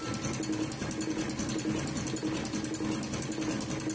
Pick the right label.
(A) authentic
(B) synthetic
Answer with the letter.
A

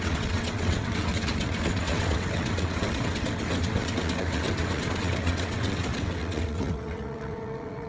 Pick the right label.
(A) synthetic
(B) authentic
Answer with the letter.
A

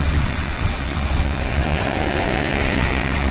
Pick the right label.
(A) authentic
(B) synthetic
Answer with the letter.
B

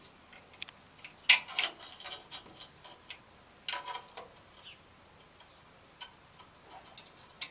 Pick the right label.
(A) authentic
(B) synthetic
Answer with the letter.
A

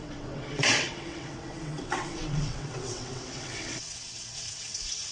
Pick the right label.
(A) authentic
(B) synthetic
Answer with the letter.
B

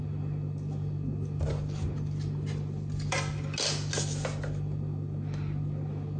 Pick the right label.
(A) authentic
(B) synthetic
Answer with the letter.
A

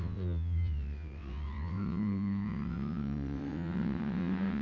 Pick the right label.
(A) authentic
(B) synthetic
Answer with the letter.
B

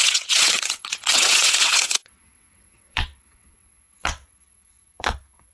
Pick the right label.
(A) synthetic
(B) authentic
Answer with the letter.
A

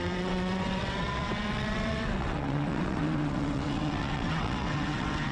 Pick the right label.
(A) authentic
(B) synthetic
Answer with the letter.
B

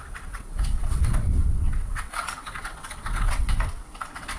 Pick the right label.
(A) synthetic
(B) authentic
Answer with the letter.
A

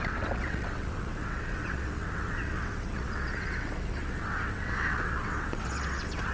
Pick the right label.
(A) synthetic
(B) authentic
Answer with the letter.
A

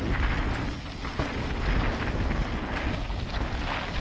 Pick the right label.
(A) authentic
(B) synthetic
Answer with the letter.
A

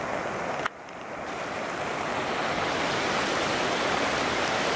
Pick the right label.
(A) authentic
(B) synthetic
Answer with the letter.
A